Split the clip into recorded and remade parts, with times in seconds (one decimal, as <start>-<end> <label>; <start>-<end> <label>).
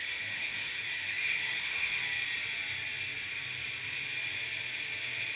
0.0-2.0 remade; 2.0-5.4 recorded